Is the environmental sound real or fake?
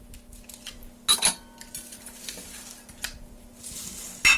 real